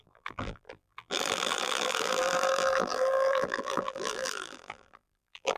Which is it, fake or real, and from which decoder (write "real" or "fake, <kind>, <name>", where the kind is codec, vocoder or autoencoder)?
fake, vocoder, BigVGAN v2